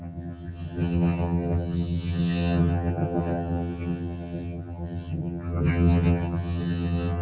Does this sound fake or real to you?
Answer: fake